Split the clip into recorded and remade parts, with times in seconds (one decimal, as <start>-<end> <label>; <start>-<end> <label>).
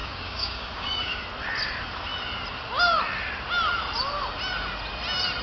0.0-1.2 remade; 1.2-5.4 recorded